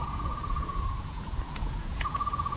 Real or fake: fake